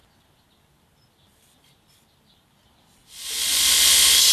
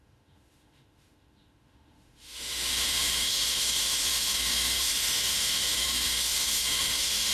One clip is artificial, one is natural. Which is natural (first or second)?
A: first